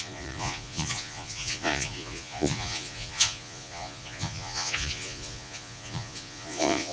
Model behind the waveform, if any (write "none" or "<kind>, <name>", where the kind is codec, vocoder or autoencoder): vocoder, Vocos